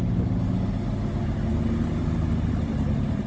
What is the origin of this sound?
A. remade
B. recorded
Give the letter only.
B